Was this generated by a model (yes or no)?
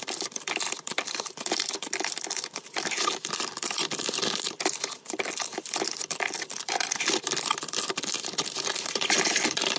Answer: yes